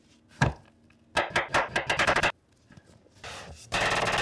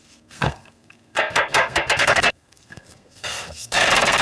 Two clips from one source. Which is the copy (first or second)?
second